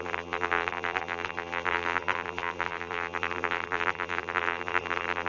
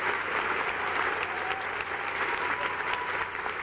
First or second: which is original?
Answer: second